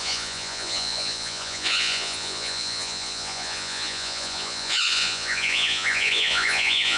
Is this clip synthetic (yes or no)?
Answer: yes